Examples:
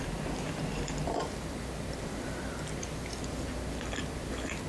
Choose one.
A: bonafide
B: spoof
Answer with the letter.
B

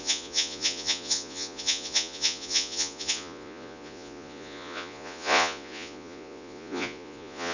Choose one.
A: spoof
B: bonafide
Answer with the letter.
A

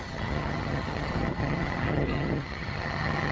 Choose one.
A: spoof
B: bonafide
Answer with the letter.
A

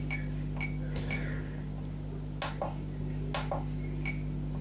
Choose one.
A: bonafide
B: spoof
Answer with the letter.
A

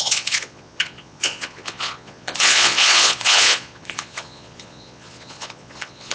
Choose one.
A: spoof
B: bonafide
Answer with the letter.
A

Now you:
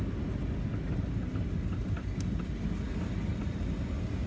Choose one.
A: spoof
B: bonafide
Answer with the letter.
B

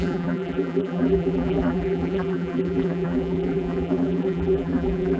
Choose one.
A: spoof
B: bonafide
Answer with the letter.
A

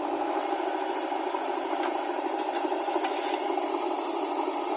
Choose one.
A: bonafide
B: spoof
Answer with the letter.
A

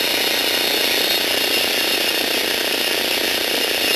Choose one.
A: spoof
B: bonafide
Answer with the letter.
B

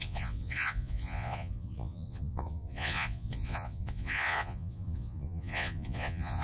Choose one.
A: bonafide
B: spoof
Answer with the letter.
B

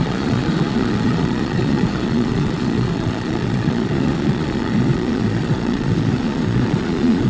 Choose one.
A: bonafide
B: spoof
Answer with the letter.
B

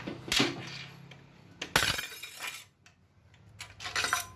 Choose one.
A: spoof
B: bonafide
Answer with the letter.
B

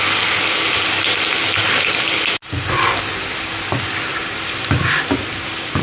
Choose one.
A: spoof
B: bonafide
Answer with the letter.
B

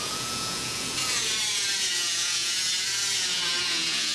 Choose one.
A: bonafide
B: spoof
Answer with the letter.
B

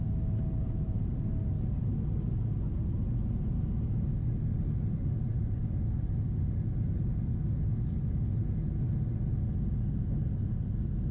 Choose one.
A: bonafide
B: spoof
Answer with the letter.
A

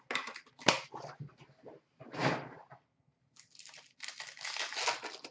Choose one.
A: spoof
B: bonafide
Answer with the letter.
B